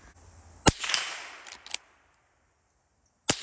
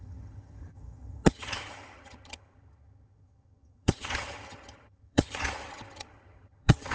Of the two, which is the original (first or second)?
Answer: first